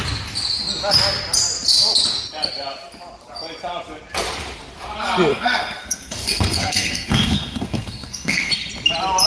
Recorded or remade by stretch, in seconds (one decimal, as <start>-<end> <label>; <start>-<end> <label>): 0.0-5.3 recorded; 5.3-8.5 remade; 8.5-9.3 recorded